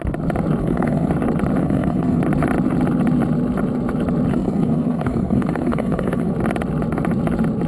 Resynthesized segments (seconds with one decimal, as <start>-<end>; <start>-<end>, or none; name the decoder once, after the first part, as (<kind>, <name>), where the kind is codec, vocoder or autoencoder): 0.6-1.1 (codec, SNAC); 1.6-2.2; 4.3-6.3